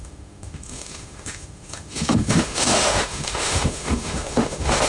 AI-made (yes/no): yes